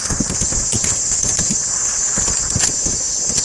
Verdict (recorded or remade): recorded